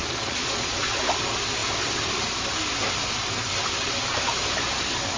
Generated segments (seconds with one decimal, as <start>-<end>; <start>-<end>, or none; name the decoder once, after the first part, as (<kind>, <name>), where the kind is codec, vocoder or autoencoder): 0.0-1.0 (vocoder, Vocos)